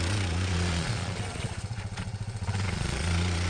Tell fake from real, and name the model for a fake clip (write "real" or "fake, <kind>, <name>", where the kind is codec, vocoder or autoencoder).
fake, vocoder, Vocos